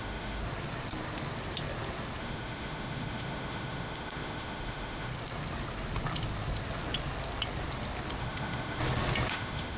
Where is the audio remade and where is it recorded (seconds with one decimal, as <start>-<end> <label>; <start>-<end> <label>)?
0.0-0.4 remade; 0.4-2.2 recorded; 2.2-5.1 remade; 5.1-8.2 recorded; 8.2-8.8 remade; 8.8-9.3 recorded; 9.3-9.8 remade